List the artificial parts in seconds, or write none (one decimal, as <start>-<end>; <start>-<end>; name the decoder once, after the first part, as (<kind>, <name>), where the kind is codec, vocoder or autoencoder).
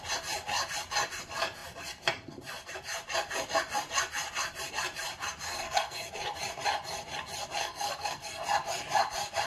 5.5-6.1 (codec, SNAC); 7.6-8.4